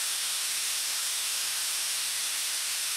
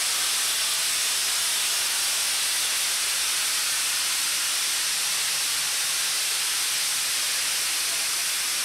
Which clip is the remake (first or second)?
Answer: first